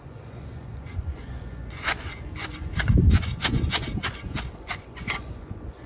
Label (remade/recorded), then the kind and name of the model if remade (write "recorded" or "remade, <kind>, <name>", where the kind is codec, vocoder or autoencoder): remade, vocoder, Vocos